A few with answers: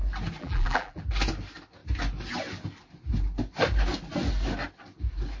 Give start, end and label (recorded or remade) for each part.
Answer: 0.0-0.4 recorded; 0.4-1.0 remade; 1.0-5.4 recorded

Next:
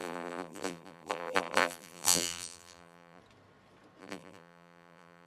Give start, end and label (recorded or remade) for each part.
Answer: 0.0-3.2 remade; 3.2-4.0 recorded; 4.0-5.3 remade

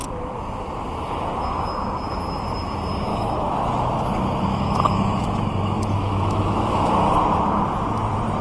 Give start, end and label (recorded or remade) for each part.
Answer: 0.0-3.1 recorded; 3.1-6.9 remade; 6.9-8.4 recorded

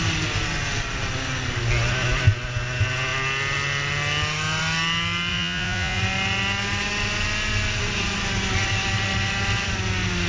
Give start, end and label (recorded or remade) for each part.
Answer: 0.0-5.3 recorded; 5.3-6.0 remade; 6.0-10.3 recorded